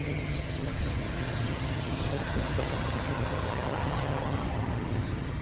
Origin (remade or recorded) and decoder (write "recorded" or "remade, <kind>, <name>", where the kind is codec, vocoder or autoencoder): remade, vocoder, HiFi-GAN